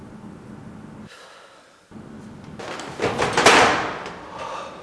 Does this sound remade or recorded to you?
recorded